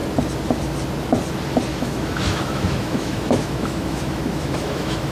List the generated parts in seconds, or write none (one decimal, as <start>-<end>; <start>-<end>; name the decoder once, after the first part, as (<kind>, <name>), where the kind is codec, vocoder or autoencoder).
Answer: 1.7-5.1 (autoencoder, DAC-VAE)